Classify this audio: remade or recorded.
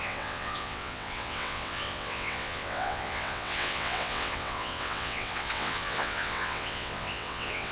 remade